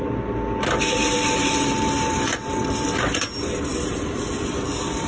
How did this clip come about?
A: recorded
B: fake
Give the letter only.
A